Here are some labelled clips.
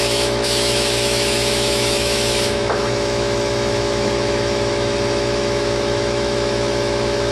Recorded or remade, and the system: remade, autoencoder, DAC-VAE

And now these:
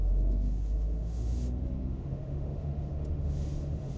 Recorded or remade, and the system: remade, autoencoder, DAC-VAE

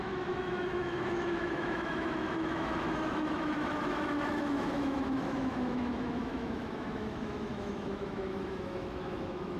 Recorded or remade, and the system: remade, autoencoder, DAC-VAE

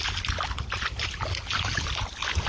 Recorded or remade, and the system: recorded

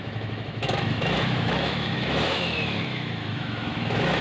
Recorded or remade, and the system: remade, autoencoder, DAC-VAE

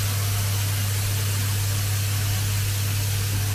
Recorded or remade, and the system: recorded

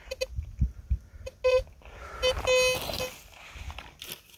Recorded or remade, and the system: recorded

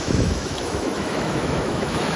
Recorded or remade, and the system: remade, autoencoder, DAC-VAE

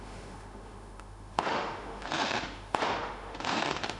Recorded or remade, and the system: remade, autoencoder, DAC-VAE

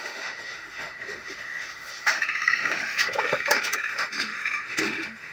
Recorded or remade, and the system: remade, autoencoder, DAC-VAE